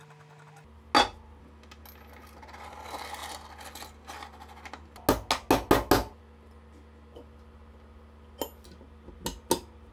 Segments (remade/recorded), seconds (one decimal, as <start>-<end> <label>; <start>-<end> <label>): 0.0-9.9 recorded